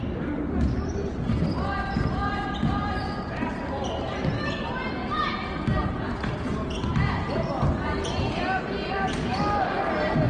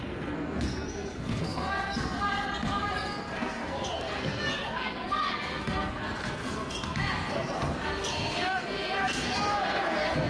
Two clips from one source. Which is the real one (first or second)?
first